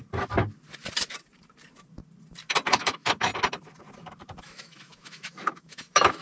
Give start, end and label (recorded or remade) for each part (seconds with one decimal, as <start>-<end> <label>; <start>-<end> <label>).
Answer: 0.0-2.7 recorded; 2.7-3.3 remade; 3.3-4.4 recorded; 4.4-6.2 remade